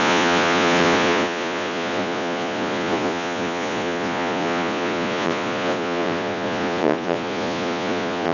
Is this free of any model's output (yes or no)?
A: no